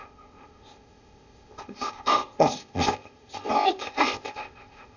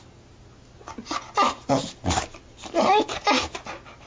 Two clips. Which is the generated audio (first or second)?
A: first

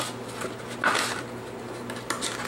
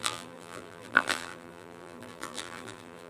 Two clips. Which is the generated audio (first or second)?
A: second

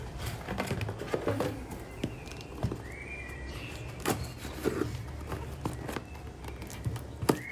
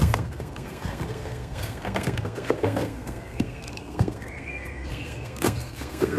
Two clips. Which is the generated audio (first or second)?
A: second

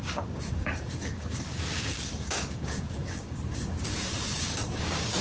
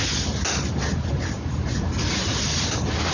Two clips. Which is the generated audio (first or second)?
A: first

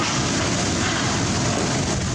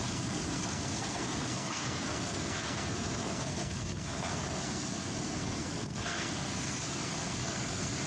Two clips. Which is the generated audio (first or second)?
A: second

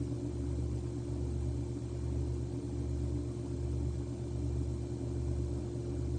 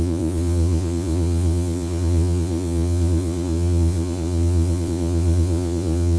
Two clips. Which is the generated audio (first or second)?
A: second